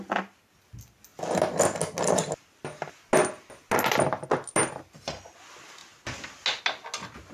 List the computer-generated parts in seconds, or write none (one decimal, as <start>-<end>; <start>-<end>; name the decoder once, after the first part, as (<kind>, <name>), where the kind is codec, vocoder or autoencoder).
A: none